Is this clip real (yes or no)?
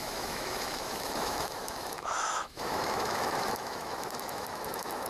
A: no